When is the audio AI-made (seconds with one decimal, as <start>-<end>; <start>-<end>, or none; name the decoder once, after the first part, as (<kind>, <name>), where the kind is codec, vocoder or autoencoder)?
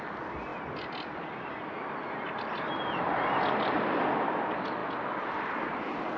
none